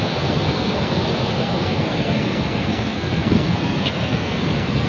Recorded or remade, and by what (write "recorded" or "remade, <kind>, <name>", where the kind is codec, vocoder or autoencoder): remade, codec, SNAC